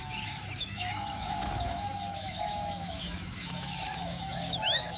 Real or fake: fake